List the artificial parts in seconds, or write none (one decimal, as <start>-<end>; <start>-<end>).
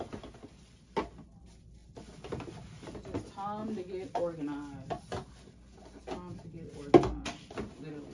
none